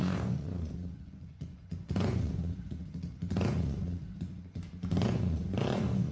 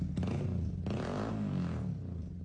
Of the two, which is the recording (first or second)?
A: second